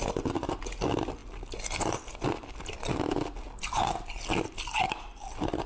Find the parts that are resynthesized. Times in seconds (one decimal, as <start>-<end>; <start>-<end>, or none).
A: none